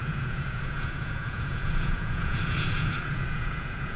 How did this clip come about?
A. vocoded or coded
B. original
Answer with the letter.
A